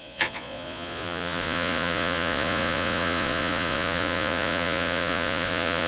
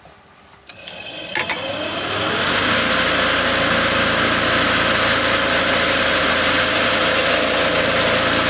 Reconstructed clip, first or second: first